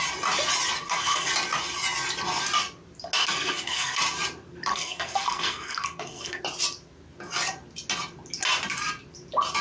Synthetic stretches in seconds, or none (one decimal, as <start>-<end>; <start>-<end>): 0.8-1.3; 3.2-4.0; 4.7-6.4